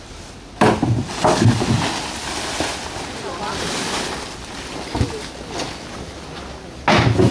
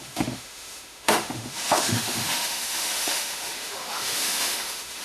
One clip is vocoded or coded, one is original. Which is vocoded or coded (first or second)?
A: second